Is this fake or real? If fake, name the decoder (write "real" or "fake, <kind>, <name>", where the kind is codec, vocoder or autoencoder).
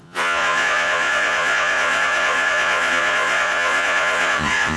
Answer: fake, vocoder, Vocos